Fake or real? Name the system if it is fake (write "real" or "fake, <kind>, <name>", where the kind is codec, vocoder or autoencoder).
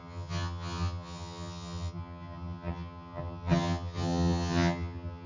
fake, vocoder, HiFi-GAN